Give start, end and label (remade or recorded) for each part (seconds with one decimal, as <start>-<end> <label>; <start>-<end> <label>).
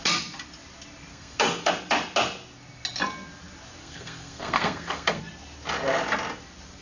0.0-1.1 recorded; 1.1-1.7 remade; 1.7-3.8 recorded; 3.8-5.2 remade; 5.2-6.8 recorded